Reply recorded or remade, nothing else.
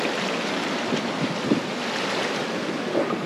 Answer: recorded